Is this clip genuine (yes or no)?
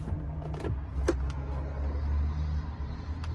yes